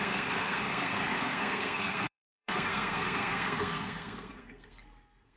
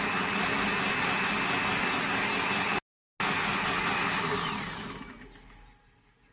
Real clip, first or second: second